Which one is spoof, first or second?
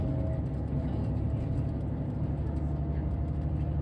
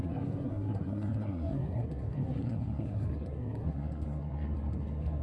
second